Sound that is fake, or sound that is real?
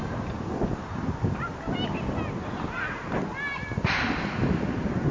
real